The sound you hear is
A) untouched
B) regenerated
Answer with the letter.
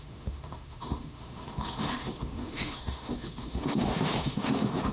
B